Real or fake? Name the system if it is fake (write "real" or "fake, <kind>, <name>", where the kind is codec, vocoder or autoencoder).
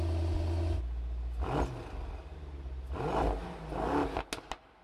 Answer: real